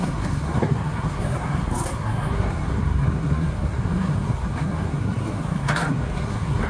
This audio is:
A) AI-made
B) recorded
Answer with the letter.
A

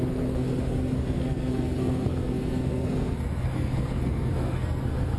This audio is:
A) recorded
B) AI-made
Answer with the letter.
B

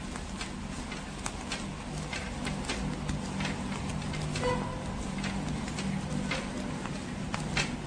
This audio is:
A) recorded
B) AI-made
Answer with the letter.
A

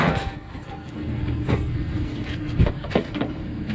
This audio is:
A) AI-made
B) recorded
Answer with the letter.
A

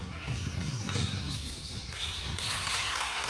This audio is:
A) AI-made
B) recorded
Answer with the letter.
A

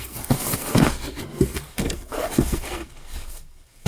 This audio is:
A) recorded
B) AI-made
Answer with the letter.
B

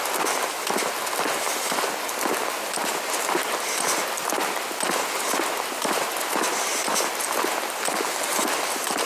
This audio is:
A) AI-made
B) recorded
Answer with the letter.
B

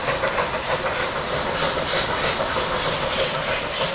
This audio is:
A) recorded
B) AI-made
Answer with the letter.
A